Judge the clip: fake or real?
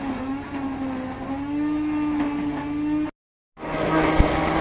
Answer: real